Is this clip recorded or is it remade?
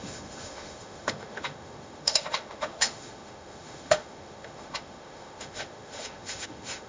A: remade